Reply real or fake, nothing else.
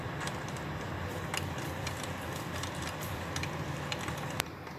fake